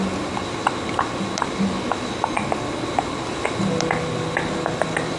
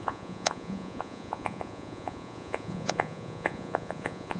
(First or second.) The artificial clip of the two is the second